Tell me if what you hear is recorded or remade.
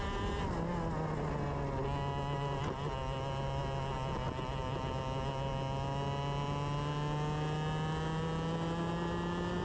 recorded